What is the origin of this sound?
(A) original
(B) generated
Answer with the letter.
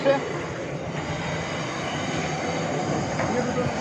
A